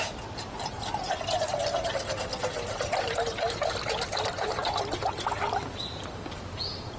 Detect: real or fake real